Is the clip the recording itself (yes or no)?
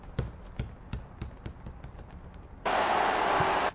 yes